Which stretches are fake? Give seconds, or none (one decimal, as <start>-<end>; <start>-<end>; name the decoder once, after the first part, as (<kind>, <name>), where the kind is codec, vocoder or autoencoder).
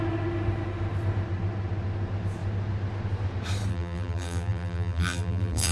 3.7-5.7 (vocoder, BigVGAN v2)